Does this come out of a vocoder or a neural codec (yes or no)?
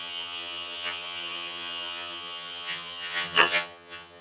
yes